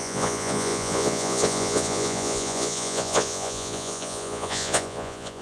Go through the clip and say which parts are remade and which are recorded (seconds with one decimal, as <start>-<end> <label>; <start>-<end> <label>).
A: 0.0-5.4 remade